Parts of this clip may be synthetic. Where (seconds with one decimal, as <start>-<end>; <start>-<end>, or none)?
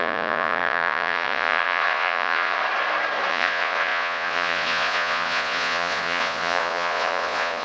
0.0-2.6; 3.3-7.6